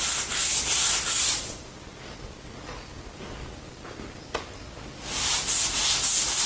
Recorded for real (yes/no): yes